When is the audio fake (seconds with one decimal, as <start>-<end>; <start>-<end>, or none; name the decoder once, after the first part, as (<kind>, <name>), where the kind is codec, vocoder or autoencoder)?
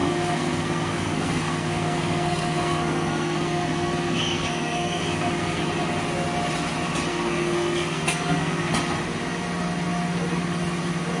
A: 0.0-5.6 (codec, SNAC); 7.1-8.7